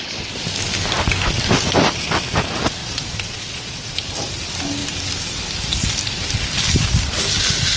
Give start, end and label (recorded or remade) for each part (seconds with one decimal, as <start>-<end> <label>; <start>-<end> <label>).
0.0-2.8 recorded; 2.8-3.9 remade; 3.9-7.8 recorded